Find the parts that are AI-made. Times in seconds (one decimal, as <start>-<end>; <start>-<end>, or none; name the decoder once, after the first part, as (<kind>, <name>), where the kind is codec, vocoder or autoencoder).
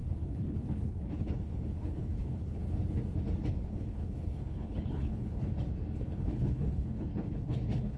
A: 0.0-2.6 (codec, HILCodec); 3.5-5.5; 6.0-8.0